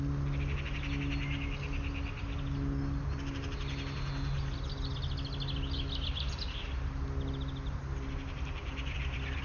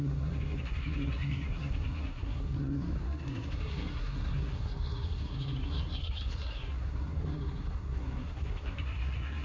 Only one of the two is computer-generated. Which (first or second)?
second